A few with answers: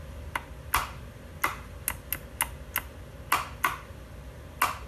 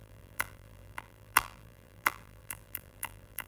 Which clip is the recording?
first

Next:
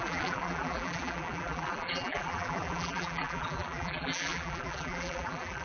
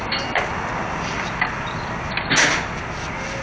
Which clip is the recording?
second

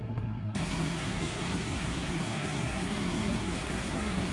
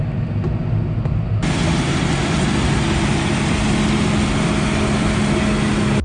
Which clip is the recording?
second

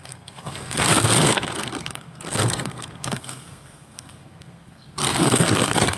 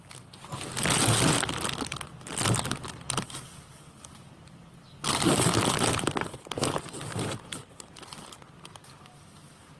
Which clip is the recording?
second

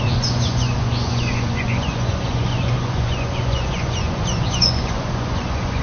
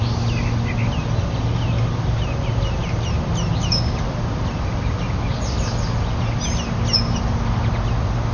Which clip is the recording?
second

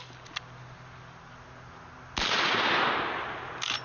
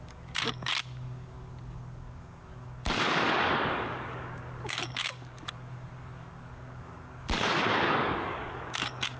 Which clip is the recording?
first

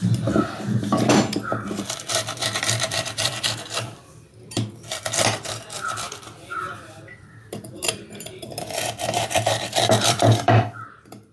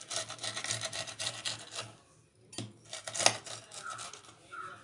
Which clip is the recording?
second